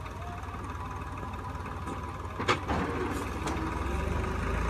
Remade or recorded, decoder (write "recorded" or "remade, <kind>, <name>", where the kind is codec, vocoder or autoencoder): recorded